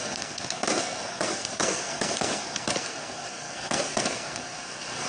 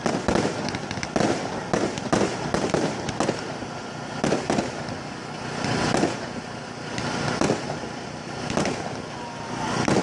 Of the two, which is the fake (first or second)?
first